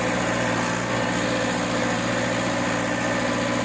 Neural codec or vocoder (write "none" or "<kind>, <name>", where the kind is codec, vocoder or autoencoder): none